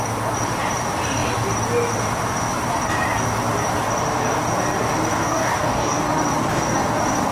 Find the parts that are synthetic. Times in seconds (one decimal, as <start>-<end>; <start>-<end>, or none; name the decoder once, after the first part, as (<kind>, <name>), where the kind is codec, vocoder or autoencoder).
5.2-6.0 (codec, DAC)

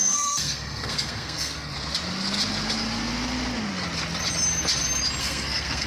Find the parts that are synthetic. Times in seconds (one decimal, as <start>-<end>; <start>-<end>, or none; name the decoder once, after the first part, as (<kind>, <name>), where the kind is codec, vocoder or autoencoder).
0.0-1.7 (codec, SNAC); 5.2-5.9

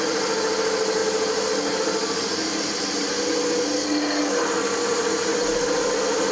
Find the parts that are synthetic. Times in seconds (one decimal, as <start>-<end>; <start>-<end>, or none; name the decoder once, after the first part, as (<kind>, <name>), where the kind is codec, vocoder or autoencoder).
none

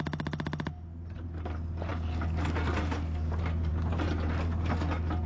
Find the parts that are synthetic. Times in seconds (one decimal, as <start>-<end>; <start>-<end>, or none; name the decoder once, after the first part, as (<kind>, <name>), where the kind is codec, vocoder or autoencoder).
none

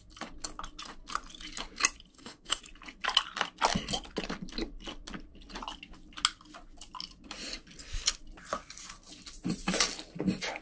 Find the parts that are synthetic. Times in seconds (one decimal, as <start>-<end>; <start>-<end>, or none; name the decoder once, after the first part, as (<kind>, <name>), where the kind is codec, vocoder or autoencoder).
2.1-2.6 (autoencoder, DAC-VAE)

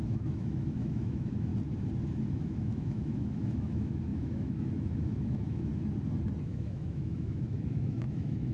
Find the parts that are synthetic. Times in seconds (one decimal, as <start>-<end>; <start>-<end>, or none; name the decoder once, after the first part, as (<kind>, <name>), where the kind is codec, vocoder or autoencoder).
0.0-1.5 (autoencoder, DAC-VAE); 2.3-5.7; 6.4-8.5